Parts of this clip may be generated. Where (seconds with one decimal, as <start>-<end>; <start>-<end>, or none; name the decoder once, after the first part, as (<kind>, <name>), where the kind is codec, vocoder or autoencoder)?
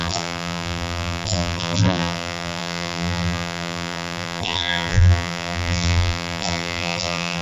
0.0-7.4 (vocoder, BigVGAN v2)